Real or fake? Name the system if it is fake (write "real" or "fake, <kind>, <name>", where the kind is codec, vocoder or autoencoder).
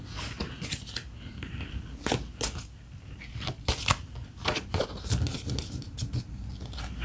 real